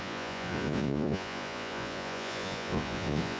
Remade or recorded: remade